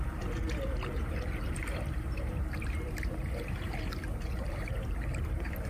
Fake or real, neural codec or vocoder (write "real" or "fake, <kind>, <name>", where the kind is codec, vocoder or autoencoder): fake, vocoder, BigVGAN v2